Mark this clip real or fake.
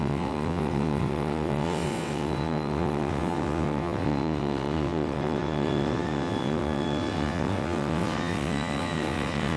fake